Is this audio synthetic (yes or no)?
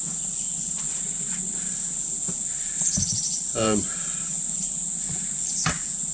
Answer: yes